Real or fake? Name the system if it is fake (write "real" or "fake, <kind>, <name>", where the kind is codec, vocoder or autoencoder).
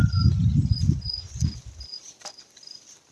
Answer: real